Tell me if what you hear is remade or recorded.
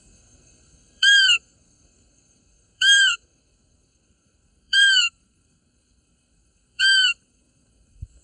remade